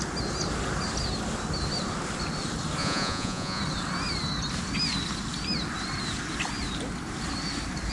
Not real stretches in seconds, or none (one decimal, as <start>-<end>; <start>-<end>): 2.8-3.6